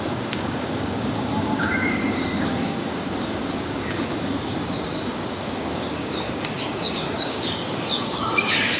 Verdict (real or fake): fake